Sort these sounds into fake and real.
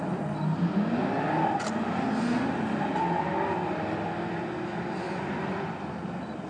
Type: real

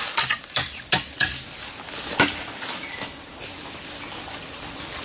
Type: real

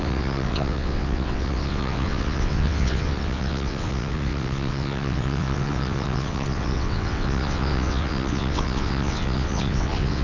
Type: fake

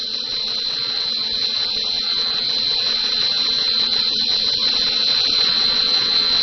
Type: fake